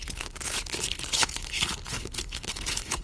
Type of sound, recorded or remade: remade